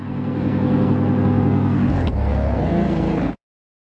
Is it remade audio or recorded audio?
remade